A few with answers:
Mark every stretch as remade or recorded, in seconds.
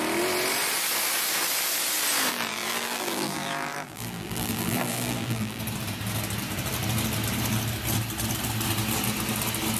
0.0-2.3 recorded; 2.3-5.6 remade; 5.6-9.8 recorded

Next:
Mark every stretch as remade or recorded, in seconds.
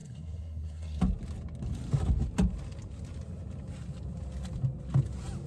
0.0-1.0 remade; 1.0-5.5 recorded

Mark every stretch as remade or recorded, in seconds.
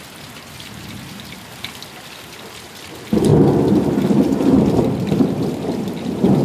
0.0-6.4 recorded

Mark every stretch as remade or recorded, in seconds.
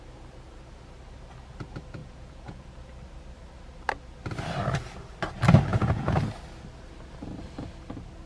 0.0-2.0 recorded; 2.0-2.7 remade; 2.7-5.7 recorded; 5.7-6.2 remade; 6.2-8.3 recorded